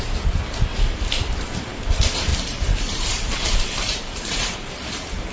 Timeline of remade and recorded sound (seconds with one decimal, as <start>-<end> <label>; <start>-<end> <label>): 0.0-0.7 recorded; 0.7-1.8 remade; 1.8-2.3 recorded; 2.3-4.7 remade; 4.7-5.3 recorded